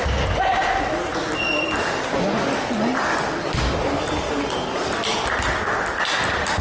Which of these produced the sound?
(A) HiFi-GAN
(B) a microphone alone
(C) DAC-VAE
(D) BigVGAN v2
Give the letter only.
B